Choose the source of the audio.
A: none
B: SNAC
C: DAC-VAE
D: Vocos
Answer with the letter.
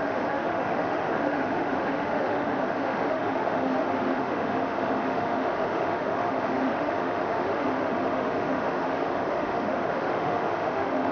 C